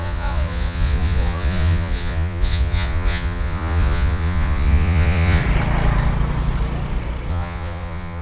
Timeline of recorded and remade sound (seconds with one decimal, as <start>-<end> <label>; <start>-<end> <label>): 0.0-5.4 remade; 5.4-7.3 recorded; 7.3-8.2 remade